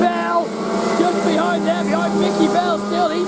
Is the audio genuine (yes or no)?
yes